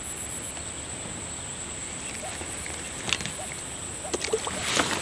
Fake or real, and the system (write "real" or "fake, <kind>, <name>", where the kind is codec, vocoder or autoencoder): real